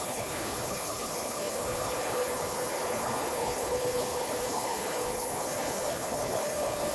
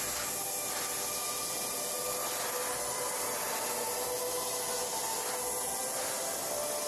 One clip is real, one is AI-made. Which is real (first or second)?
second